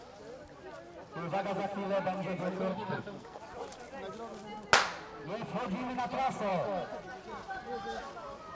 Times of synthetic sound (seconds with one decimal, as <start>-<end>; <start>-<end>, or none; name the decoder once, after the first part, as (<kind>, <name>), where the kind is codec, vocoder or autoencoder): 2.7-3.4 (codec, SNAC)